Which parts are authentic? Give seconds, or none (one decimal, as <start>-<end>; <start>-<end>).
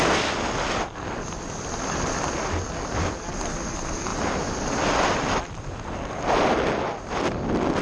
0.0-4.1; 5.4-7.8